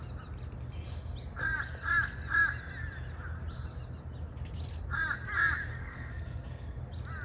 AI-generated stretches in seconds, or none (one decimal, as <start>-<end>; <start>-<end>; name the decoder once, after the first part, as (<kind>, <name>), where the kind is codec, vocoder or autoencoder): 5.7-6.8 (codec, SNAC)